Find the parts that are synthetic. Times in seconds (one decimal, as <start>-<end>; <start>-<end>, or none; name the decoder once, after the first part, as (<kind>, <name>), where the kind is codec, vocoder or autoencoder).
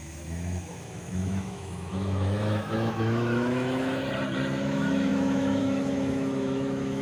0.0-4.0 (autoencoder, DAC-VAE); 4.6-7.0